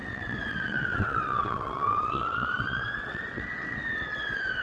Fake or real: fake